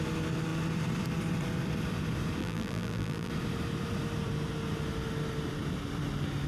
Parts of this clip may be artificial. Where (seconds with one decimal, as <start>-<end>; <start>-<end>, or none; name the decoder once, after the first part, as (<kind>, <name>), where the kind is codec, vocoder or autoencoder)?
2.4-3.3 (vocoder, BigVGAN v2)